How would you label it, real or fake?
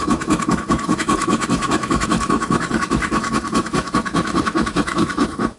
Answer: fake